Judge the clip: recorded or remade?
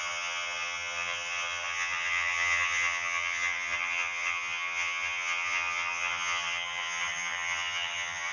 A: remade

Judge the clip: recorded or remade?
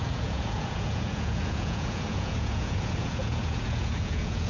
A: remade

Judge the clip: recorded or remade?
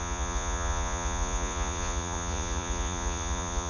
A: remade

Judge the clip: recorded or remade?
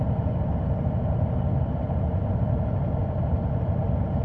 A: recorded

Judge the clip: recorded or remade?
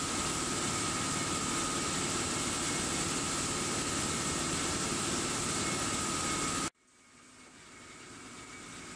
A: recorded